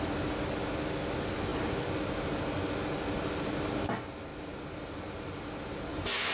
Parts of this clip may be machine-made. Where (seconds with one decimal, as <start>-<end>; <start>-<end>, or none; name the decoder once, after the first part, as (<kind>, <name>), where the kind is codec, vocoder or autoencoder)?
none